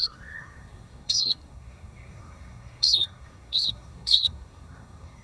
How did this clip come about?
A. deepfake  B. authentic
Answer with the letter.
A